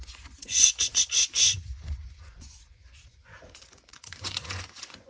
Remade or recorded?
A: remade